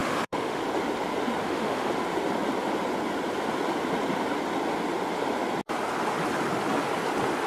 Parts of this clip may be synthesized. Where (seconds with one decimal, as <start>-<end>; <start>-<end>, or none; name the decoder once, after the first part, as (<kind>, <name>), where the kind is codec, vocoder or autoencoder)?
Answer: 0.0-0.6 (autoencoder, DAC-VAE); 1.4-1.9